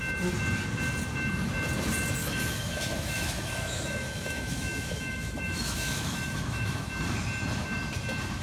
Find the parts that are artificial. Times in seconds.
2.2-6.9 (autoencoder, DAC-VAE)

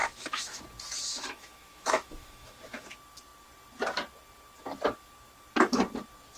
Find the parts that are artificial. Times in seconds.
0.0-0.6 (autoencoder, DAC-VAE); 1.1-2.9

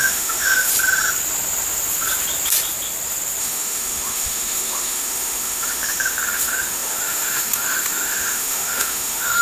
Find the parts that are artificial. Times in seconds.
0.0-0.7 (autoencoder, DAC-VAE); 3.4-9.4

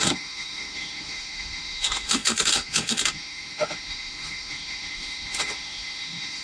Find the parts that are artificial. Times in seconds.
0.0-6.4 (autoencoder, DAC-VAE)

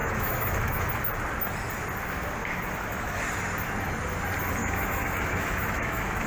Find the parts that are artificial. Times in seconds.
0.0-0.9 (autoencoder, DAC-VAE); 2.4-3.2; 4.6-6.3